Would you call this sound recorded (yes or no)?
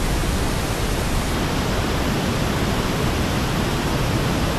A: yes